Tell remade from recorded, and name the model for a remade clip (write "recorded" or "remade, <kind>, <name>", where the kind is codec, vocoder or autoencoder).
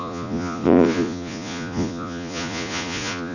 remade, vocoder, Vocos